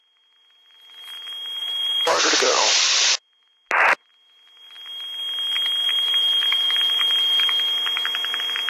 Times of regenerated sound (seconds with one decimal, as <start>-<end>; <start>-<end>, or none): 1.6-2.3; 5.8-7.0